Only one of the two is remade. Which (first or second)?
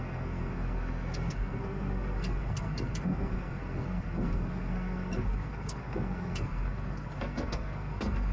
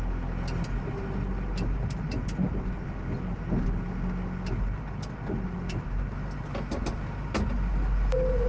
first